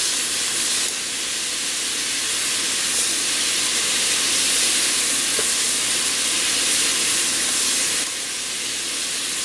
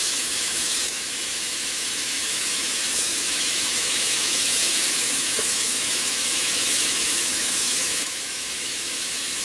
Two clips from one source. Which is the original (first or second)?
first